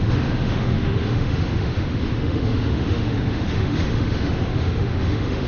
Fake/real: fake